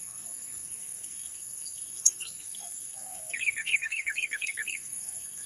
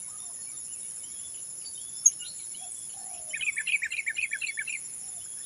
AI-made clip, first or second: first